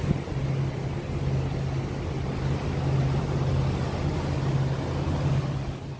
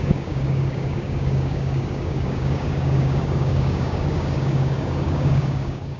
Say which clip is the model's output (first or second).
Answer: second